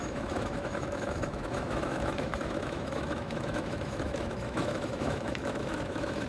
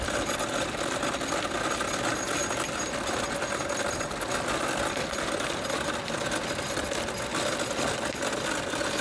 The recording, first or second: second